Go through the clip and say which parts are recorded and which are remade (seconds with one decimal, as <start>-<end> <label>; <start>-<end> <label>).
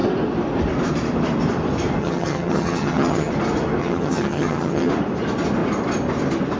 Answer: 0.0-2.0 recorded; 2.0-3.3 remade; 3.3-3.8 recorded; 3.8-4.9 remade; 4.9-6.6 recorded